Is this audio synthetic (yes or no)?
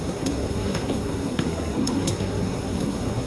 yes